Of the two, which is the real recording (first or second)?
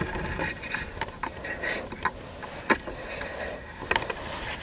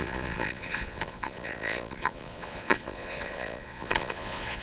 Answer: first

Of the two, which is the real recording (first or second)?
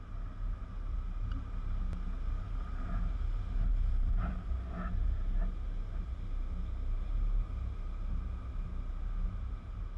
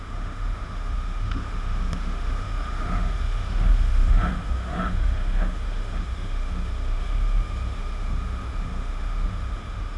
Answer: first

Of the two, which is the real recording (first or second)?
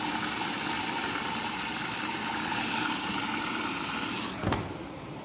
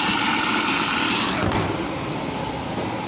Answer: second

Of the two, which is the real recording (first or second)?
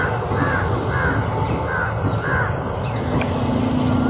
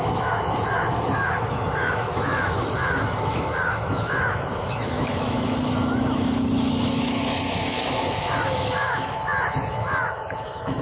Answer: first